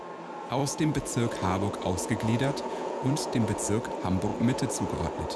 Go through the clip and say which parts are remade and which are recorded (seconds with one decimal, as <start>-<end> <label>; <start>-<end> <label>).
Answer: 0.0-0.6 recorded; 0.6-3.7 remade; 3.7-4.3 recorded; 4.3-5.0 remade; 5.0-5.4 recorded

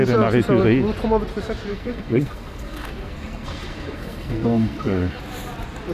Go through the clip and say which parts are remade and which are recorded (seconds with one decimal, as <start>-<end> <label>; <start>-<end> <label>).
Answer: 0.0-1.7 recorded; 1.7-5.2 remade; 5.2-5.9 recorded